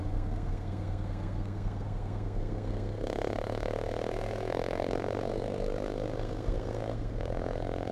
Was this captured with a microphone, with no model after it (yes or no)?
no